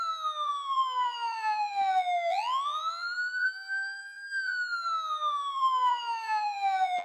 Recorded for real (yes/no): no